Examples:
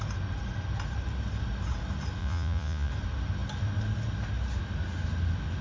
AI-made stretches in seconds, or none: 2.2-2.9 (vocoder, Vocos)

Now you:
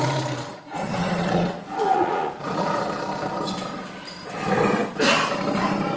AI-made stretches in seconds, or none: 0.5-2.8 (vocoder, Vocos)

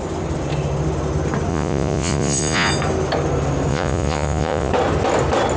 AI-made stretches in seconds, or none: 1.5-2.7 (vocoder, Vocos); 3.7-4.7

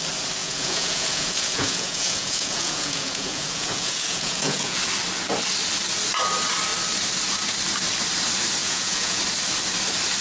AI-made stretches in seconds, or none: 0.4-4.8 (vocoder, Vocos); 8.6-9.2

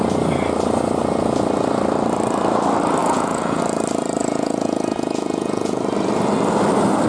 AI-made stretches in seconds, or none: 3.0-3.6 (vocoder, Vocos); 4.2-5.8

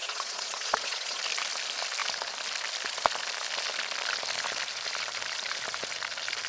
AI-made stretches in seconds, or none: 0.0-1.2 (vocoder, Vocos)

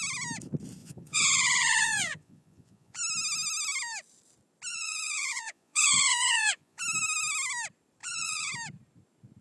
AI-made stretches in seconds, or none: 0.8-3.0 (vocoder, Vocos); 4.7-6.8; 8.0-8.5